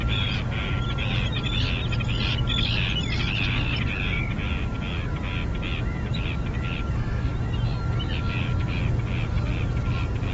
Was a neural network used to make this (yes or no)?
no